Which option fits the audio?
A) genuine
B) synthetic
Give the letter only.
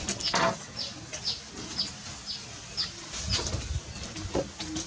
A